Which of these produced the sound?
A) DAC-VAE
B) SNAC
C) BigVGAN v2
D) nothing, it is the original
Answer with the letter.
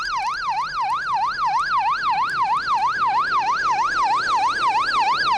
D